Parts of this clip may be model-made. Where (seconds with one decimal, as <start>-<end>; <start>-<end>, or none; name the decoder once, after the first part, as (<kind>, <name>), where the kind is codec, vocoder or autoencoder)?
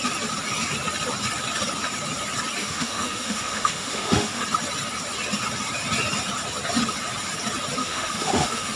2.6-4.4 (autoencoder, DAC-VAE); 7.8-8.8